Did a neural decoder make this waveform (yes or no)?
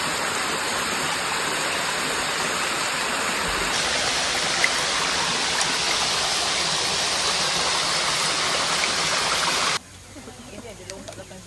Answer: no